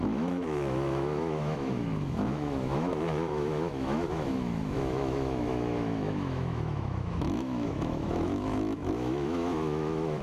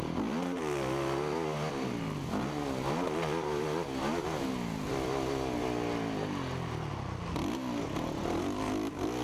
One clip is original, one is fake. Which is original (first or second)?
second